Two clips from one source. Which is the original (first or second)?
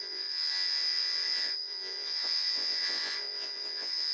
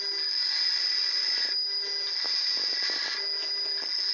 second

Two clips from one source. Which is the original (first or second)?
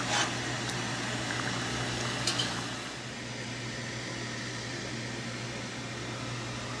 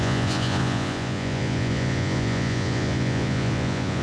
first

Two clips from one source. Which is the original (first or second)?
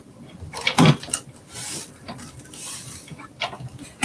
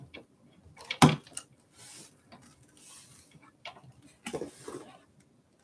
second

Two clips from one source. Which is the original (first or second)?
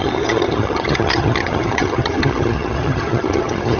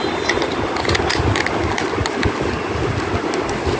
second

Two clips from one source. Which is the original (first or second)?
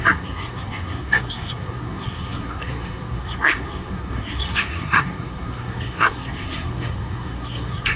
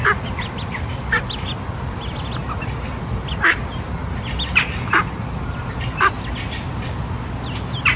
second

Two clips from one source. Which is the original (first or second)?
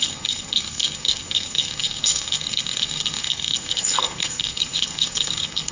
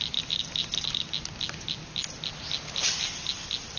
second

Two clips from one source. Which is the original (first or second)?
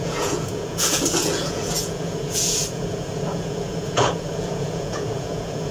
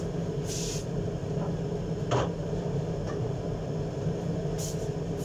second